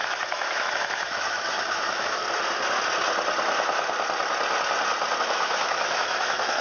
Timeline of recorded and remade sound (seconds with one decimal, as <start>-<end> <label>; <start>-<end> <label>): 0.0-2.2 remade; 2.2-5.2 recorded; 5.2-6.6 remade